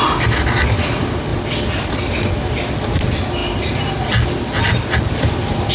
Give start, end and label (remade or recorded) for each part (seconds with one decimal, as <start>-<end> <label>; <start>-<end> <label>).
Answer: 0.0-5.7 recorded